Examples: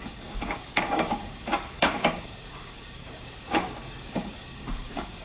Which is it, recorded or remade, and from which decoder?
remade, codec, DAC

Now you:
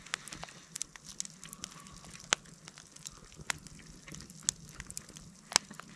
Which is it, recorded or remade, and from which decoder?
recorded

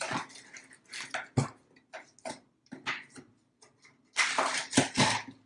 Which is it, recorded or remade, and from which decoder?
recorded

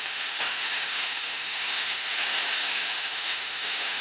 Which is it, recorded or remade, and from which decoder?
remade, autoencoder, DAC-VAE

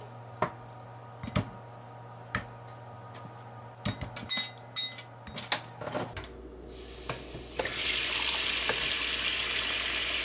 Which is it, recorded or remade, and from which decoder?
recorded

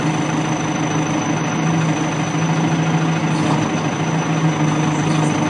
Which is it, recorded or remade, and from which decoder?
recorded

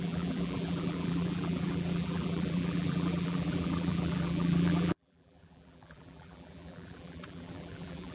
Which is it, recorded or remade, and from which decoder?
remade, vocoder, BigVGAN v2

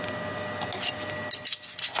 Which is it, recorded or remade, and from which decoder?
recorded